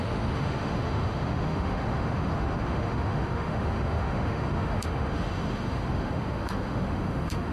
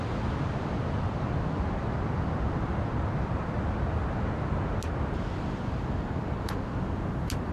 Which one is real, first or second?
second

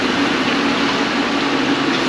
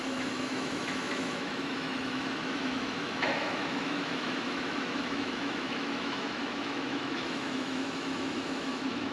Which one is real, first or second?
first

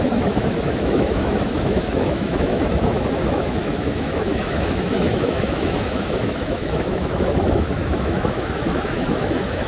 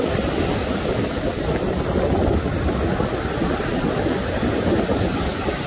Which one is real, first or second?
second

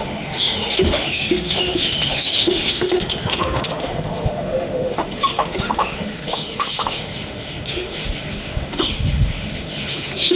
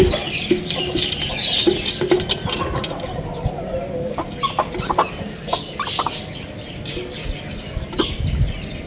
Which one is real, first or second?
second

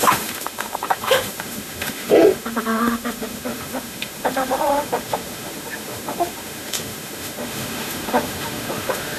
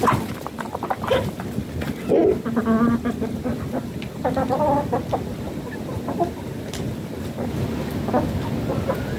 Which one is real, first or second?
second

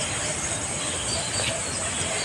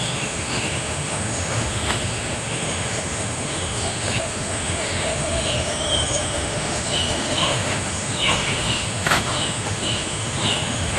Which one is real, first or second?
first